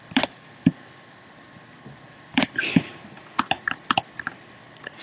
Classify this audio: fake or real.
fake